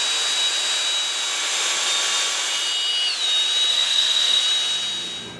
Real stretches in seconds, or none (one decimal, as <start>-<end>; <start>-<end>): 0.0-3.7; 4.4-5.4

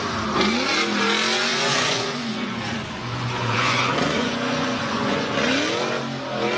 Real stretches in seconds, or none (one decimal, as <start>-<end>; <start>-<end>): 0.0-1.5; 5.5-6.6

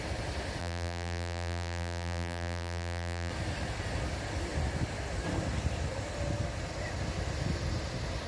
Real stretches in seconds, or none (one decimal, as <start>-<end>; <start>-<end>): 0.0-0.6; 3.3-8.3

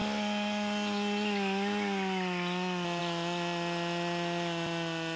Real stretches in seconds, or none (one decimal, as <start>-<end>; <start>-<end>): 0.0-5.2

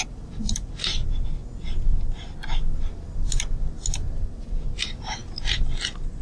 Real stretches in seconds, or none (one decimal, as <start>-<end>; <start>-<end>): 1.4-4.8

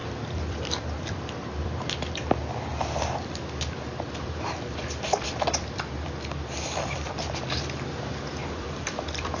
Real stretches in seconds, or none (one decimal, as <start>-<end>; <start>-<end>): 1.9-2.7; 7.8-8.4